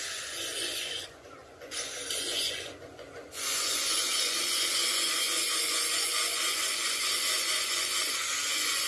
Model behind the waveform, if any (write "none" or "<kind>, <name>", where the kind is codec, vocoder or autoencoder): vocoder, Vocos